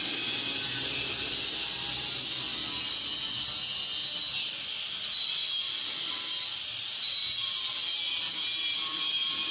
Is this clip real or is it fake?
real